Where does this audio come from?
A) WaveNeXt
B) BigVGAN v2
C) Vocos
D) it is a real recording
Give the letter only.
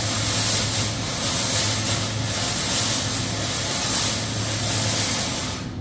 D